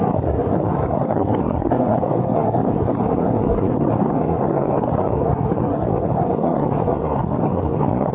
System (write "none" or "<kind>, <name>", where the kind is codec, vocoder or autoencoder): codec, SNAC